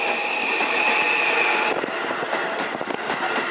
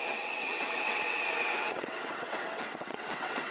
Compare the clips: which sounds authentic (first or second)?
first